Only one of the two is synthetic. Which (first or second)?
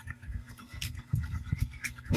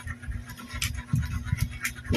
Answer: first